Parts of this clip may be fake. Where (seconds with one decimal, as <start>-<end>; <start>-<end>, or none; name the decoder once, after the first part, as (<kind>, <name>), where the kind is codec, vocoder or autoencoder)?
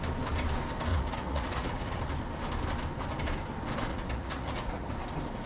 0.9-2.0 (vocoder, Vocos); 3.9-4.9